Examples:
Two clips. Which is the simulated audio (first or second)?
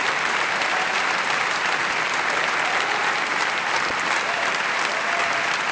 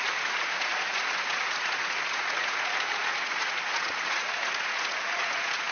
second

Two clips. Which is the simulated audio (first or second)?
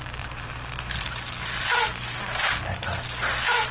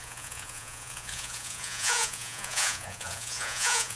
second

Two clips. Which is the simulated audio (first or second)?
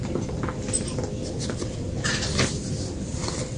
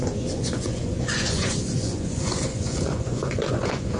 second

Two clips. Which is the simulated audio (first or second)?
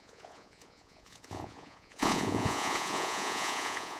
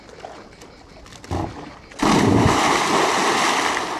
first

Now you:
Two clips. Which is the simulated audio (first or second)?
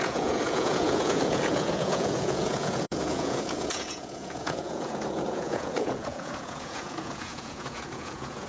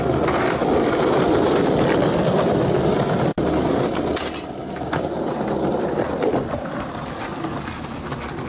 first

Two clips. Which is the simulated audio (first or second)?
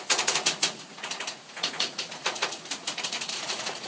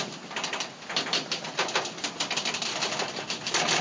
first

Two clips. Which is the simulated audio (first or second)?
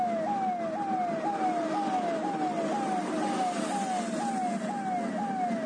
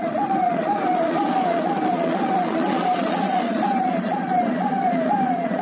second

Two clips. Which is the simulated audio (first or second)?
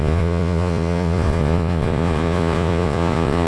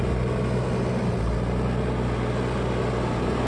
first